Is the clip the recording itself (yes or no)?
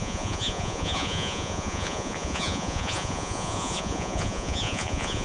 no